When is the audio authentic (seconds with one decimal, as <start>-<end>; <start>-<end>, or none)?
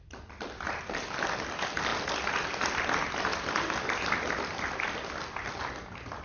0.0-6.2